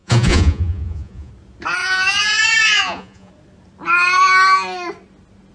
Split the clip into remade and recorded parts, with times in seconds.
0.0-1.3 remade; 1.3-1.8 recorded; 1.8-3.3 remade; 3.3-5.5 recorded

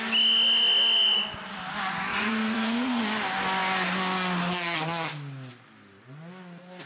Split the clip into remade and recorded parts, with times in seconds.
0.0-2.1 recorded; 2.1-3.0 remade; 3.0-6.9 recorded

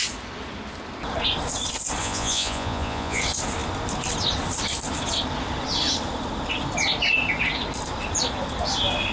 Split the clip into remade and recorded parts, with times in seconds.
0.0-2.0 recorded; 2.0-3.2 remade; 3.2-9.1 recorded